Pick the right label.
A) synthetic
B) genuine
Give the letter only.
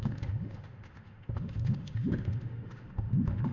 A